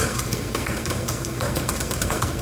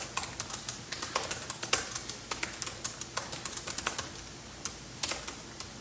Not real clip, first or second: first